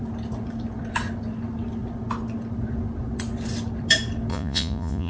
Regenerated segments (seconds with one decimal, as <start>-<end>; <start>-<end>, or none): 4.3-5.1